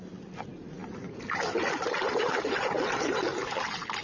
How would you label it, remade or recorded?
recorded